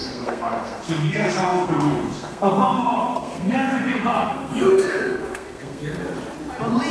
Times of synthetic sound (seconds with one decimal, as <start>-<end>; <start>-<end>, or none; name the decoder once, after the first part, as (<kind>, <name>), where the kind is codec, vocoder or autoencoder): 0.0-6.0 (codec, SNAC)